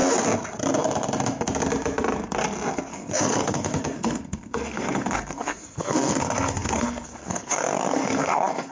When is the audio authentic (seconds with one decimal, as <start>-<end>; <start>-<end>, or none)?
0.0-2.9